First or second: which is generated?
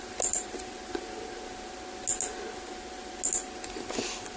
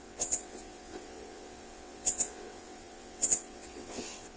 second